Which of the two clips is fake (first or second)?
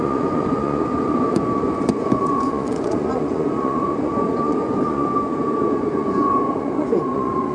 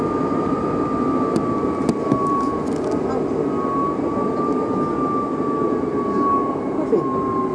first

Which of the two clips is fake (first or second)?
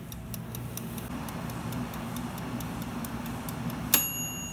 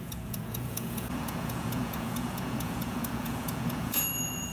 second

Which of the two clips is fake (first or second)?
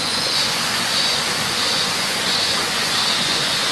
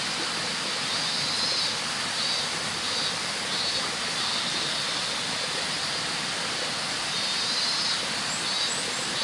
first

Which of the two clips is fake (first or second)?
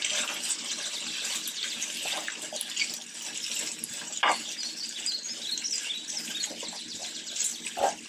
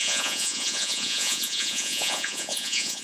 second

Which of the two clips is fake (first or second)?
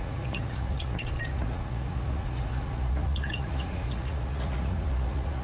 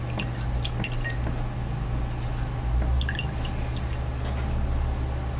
first